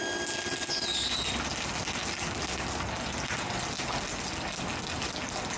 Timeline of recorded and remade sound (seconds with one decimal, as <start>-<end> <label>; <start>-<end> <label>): 0.0-5.6 recorded

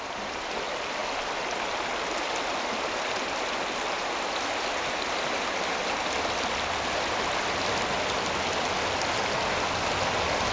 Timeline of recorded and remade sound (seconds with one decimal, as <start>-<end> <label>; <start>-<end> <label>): 0.0-10.5 recorded

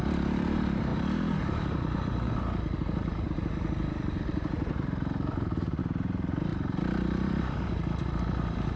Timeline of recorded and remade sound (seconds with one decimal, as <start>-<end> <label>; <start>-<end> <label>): 0.0-8.8 remade

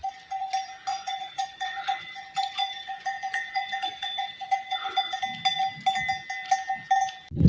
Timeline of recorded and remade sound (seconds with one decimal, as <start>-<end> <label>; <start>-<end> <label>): 0.0-0.9 recorded; 0.9-5.2 remade; 5.2-7.5 recorded

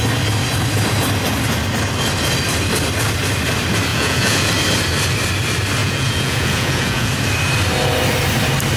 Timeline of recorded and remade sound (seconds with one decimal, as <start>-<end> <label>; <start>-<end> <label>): 0.0-3.9 recorded; 3.9-4.5 remade; 4.5-5.8 recorded; 5.8-7.1 remade; 7.1-8.8 recorded